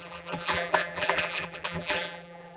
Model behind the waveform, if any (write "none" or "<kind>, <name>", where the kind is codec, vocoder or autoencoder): vocoder, BigVGAN v2